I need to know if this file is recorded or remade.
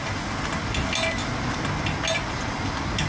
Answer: recorded